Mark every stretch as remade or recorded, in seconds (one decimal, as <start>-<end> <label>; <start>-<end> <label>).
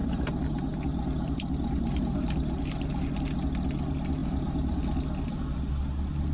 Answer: 0.0-3.2 remade; 3.2-4.2 recorded; 4.2-4.8 remade; 4.8-6.3 recorded